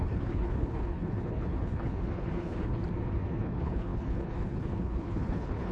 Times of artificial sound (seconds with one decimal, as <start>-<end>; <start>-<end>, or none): 0.0-2.8; 3.4-5.7